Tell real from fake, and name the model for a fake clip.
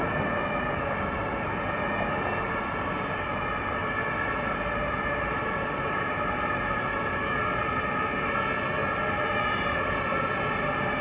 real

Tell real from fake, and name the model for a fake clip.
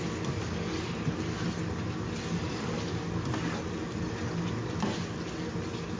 real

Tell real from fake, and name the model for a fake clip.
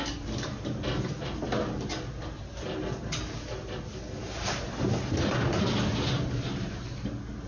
real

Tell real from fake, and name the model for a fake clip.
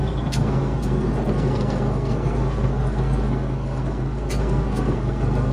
fake, codec, SNAC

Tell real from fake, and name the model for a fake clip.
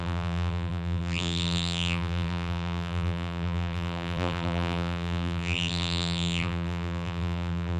fake, vocoder, BigVGAN v2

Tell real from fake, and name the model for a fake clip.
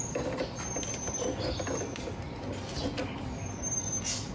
real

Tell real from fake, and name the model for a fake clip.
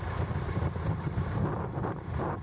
real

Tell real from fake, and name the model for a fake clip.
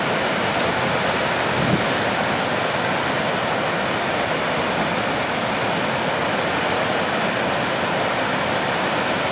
real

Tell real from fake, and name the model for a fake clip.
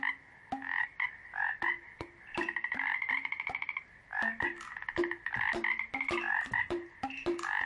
real